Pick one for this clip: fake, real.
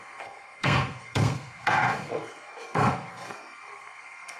fake